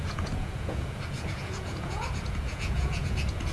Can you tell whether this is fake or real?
fake